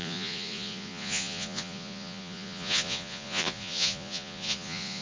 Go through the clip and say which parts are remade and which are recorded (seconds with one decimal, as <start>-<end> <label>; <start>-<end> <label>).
0.0-5.0 remade

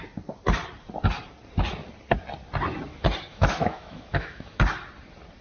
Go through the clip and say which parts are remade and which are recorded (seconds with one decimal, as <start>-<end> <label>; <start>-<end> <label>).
0.0-3.3 recorded; 3.3-4.6 remade; 4.6-5.4 recorded

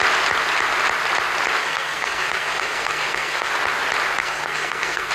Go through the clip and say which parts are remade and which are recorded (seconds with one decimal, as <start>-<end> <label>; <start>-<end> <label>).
0.0-1.6 recorded; 1.6-3.5 remade; 3.5-4.2 recorded; 4.2-5.1 remade

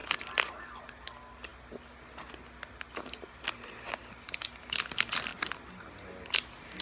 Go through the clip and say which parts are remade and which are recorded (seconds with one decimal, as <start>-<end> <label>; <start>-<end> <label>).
0.0-6.8 recorded

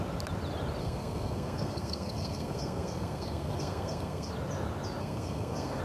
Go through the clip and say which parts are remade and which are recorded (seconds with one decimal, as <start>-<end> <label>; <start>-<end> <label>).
0.0-0.8 recorded; 0.8-4.3 remade; 4.3-5.0 recorded; 5.0-5.8 remade

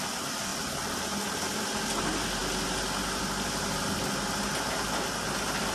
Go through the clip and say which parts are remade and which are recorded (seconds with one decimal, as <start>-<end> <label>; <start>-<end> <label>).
0.0-5.7 recorded

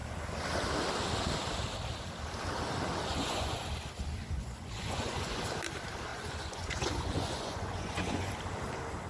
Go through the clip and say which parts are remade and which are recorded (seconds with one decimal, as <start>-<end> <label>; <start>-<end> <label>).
0.0-3.1 recorded; 3.1-3.7 remade; 3.7-4.2 recorded; 4.2-5.4 remade; 5.4-6.1 recorded; 6.1-8.3 remade; 8.3-9.1 recorded

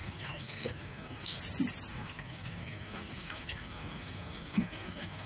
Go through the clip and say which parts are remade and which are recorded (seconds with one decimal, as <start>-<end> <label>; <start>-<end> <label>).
0.0-1.4 remade; 1.4-1.9 recorded; 1.9-5.3 remade